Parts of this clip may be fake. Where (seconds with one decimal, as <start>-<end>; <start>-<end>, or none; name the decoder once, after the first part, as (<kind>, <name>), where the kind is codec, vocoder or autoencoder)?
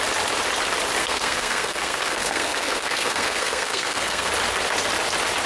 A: 1.0-4.3 (codec, SNAC)